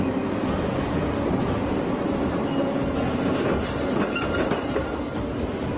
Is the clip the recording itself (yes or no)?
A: yes